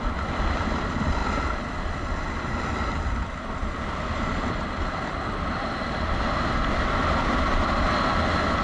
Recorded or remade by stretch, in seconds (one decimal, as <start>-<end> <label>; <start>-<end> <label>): 0.0-8.6 recorded